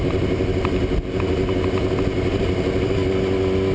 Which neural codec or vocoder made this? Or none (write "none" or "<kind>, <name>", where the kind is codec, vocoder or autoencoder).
none